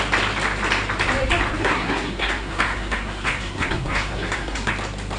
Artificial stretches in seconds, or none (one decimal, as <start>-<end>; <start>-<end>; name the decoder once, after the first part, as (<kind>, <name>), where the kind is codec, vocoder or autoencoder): 1.6-4.7 (codec, SNAC)